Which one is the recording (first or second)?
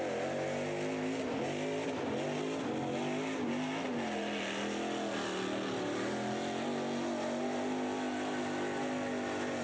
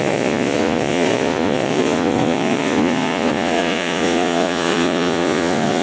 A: first